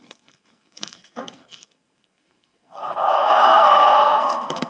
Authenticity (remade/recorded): remade